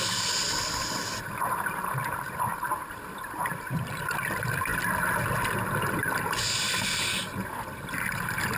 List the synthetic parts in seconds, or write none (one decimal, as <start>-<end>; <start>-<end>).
0.0-4.7; 6.4-8.6